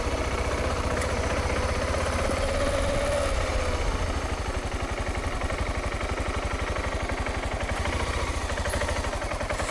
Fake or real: real